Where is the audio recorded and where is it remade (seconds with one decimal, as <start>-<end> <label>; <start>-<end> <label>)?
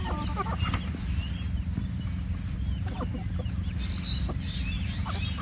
0.0-5.4 recorded